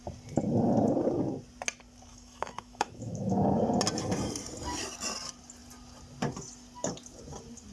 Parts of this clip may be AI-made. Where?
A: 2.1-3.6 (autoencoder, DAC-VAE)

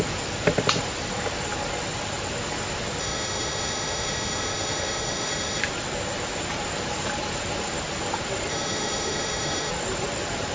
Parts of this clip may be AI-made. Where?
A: 3.0-5.6 (autoencoder, DAC-VAE); 8.5-9.7